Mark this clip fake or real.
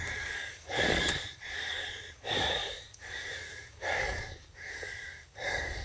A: fake